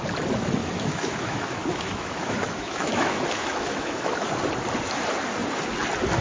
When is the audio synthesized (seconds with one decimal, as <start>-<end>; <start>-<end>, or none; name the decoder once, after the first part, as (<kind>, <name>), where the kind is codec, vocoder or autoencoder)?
0.6-4.3 (autoencoder, DAC-VAE)

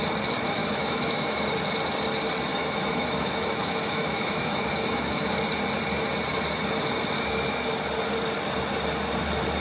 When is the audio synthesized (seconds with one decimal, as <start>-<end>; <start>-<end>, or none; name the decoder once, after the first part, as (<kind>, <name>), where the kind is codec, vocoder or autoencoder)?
0.6-1.5 (autoencoder, DAC-VAE); 2.5-5.3

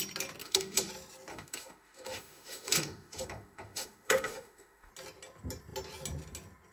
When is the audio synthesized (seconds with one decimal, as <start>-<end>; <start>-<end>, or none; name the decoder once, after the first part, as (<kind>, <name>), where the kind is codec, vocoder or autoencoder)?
0.4-0.9 (autoencoder, DAC-VAE); 1.3-4.9

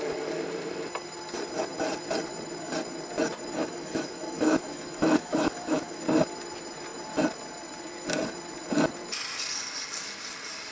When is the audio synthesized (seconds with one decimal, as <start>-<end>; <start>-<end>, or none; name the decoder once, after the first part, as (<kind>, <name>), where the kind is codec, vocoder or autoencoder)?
3.6-6.0 (autoencoder, DAC-VAE)

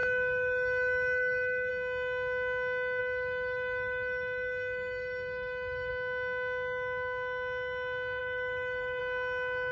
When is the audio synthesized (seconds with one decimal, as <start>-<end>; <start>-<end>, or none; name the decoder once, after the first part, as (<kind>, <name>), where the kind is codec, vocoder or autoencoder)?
0.0-1.7 (autoencoder, DAC-VAE); 3.0-5.9; 8.2-9.0

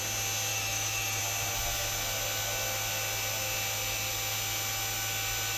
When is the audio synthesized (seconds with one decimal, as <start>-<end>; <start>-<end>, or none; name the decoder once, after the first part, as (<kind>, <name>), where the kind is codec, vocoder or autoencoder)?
0.5-1.2 (autoencoder, DAC-VAE)

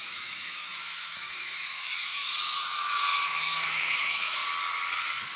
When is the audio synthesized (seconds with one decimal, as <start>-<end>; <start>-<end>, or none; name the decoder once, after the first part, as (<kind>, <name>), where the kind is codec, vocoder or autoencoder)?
0.0-4.4 (autoencoder, DAC-VAE)